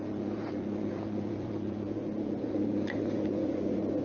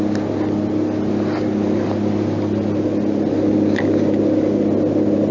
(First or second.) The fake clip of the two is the first